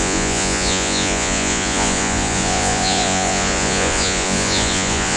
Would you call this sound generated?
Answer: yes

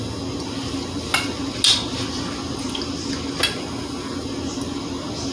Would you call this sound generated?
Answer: no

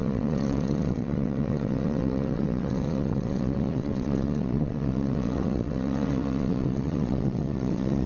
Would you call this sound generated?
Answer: yes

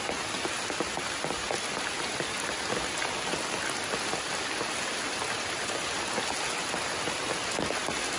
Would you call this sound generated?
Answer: no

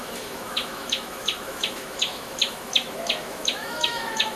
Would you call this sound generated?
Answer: yes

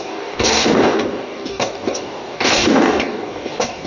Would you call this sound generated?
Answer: yes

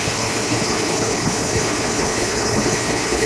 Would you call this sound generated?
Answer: yes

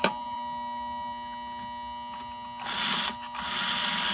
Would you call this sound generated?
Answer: no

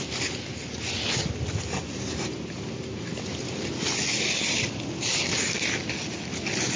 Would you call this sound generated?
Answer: no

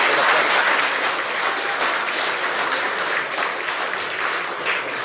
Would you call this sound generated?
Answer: no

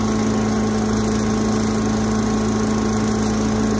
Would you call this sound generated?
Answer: no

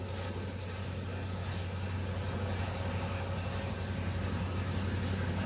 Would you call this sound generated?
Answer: no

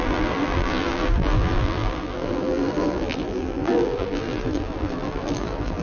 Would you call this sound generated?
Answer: yes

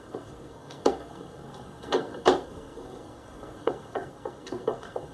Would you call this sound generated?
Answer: yes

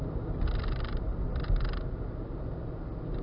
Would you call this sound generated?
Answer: no